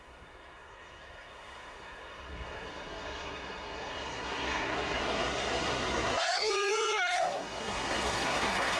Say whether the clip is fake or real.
fake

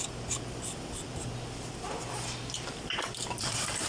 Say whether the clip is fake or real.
real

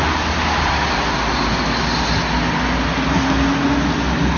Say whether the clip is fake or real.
real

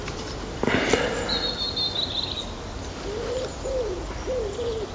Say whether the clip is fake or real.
fake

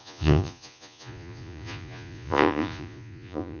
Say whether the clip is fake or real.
fake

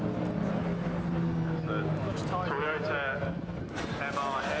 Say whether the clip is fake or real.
real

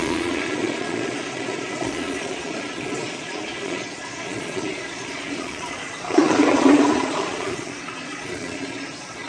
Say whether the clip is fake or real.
fake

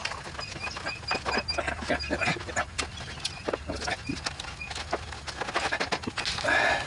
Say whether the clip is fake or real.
real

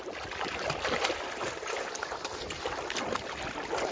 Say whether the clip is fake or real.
real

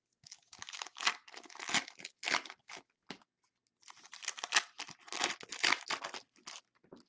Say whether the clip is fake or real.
real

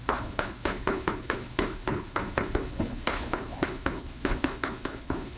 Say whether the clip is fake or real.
fake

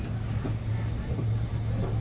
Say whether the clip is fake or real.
real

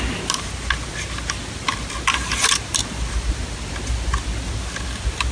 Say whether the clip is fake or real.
real